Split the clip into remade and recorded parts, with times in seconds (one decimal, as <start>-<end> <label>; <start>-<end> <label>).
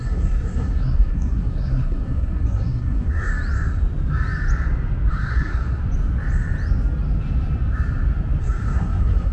0.0-3.3 remade; 3.3-5.1 recorded; 5.1-5.8 remade; 5.8-8.4 recorded; 8.4-9.3 remade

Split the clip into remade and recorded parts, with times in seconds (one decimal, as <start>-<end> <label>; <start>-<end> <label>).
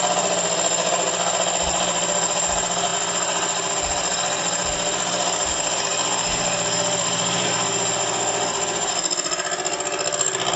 0.0-10.6 recorded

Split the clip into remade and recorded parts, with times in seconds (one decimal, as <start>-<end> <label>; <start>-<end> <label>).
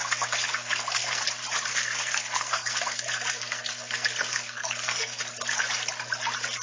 0.0-1.2 remade; 1.2-1.7 recorded; 1.7-5.2 remade; 5.2-6.6 recorded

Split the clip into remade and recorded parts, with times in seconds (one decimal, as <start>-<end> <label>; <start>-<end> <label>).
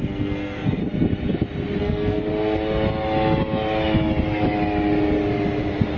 0.0-0.8 remade; 0.8-1.8 recorded; 1.8-2.3 remade; 2.3-6.0 recorded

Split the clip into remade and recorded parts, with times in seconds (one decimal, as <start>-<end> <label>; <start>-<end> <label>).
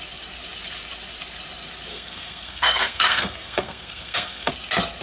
0.0-1.9 recorded; 1.9-4.5 remade; 4.5-5.0 recorded